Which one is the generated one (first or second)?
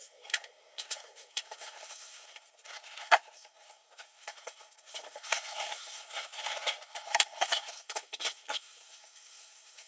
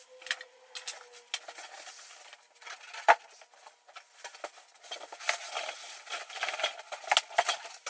first